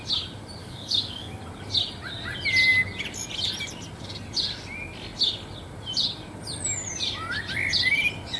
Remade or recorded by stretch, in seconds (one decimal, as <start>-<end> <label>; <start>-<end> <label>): 0.0-0.6 recorded; 0.6-1.4 remade; 1.4-8.4 recorded